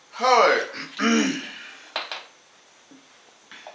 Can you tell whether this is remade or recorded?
recorded